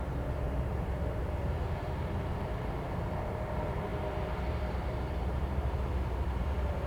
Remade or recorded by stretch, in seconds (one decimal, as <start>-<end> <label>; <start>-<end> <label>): 0.0-3.9 remade; 3.9-4.6 recorded; 4.6-6.9 remade